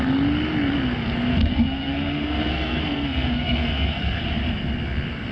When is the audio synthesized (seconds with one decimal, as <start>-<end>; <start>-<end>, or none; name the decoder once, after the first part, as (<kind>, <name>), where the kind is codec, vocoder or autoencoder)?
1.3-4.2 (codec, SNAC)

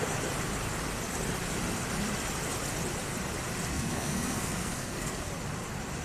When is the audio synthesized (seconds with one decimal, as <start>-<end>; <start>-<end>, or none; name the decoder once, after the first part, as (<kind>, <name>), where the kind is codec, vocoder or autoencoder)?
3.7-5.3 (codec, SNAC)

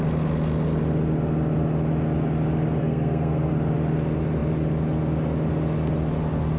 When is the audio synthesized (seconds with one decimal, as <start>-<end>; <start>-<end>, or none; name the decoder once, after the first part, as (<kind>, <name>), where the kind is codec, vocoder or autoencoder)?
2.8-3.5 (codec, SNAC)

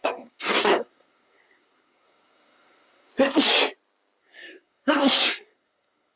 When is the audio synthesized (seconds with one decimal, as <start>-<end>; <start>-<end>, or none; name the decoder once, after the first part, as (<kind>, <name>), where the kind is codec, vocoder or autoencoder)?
0.0-3.1 (codec, SNAC); 4.2-6.2

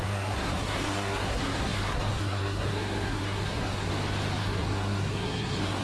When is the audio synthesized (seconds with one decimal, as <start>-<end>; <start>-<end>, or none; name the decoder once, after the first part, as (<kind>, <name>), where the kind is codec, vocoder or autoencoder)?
0.0-3.9 (codec, SNAC); 4.4-5.8